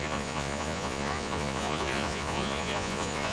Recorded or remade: remade